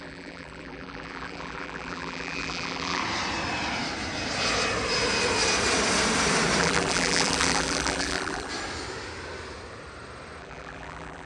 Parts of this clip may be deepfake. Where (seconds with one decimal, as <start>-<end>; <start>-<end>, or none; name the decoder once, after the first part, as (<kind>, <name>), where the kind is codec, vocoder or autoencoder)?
0.0-3.0 (vocoder, BigVGAN v2); 6.6-8.5; 10.4-11.3